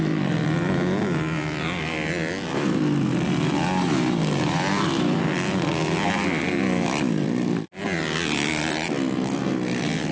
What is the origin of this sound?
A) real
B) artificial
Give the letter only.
A